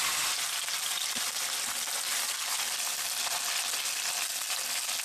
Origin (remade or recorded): recorded